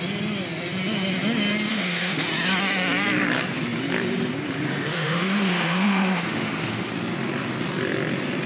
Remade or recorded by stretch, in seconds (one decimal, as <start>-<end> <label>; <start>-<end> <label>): 0.0-1.7 recorded; 1.7-2.2 remade; 2.2-4.9 recorded; 4.9-6.9 remade; 6.9-8.5 recorded